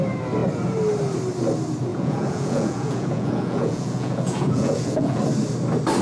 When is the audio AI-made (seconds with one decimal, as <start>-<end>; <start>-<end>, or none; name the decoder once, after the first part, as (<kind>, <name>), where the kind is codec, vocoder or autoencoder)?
1.9-5.2 (vocoder, Vocos)

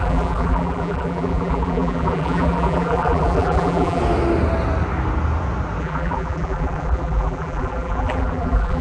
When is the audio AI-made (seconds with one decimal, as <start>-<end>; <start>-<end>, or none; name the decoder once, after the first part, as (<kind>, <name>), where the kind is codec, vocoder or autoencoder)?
0.0-4.0 (vocoder, BigVGAN v2); 5.8-8.8

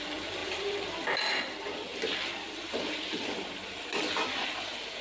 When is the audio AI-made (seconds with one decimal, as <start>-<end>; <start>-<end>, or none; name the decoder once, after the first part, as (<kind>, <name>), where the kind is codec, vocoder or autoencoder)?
0.4-1.4 (vocoder, BigVGAN v2); 1.9-3.1

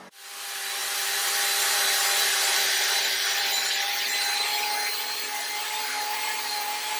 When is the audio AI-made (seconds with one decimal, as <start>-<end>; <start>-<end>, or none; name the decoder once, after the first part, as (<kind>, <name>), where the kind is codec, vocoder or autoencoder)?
0.8-3.7 (vocoder, BigVGAN v2)

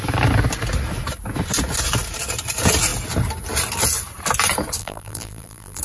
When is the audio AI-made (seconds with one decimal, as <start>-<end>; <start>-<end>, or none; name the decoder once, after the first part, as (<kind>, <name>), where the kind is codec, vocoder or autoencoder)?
4.8-5.8 (vocoder, BigVGAN v2)

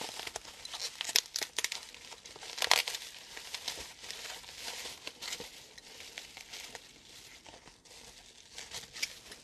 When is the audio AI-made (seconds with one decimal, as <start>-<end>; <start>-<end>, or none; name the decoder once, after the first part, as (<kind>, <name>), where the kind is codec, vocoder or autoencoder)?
1.8-2.4 (vocoder, BigVGAN v2); 4.8-8.5